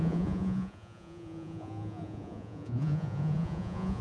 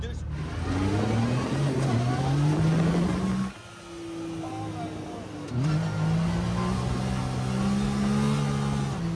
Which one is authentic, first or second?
second